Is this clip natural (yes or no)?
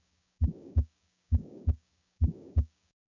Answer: no